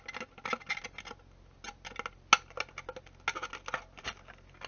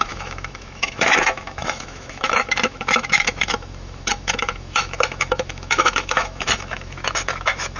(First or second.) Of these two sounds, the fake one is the second